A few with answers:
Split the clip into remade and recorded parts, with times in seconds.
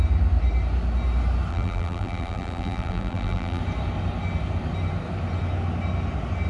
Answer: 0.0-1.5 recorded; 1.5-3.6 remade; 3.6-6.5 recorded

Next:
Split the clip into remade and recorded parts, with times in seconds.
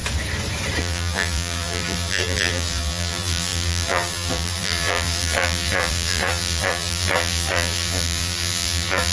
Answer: 0.0-0.8 recorded; 0.8-9.1 remade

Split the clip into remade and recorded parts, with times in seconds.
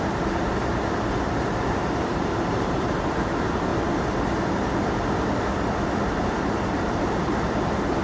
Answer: 0.0-3.7 remade; 3.7-6.3 recorded; 6.3-8.0 remade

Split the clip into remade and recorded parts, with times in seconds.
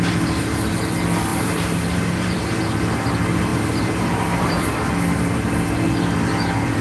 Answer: 0.0-1.3 recorded; 1.3-2.6 remade; 2.6-3.5 recorded; 3.5-4.9 remade; 4.9-6.8 recorded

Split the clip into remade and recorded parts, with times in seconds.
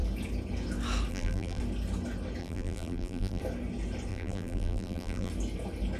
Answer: 0.0-1.1 recorded; 1.1-1.6 remade; 1.6-2.4 recorded; 2.4-3.4 remade; 3.4-4.1 recorded; 4.1-5.3 remade; 5.3-6.0 recorded